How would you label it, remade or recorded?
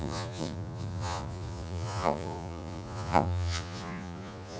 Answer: remade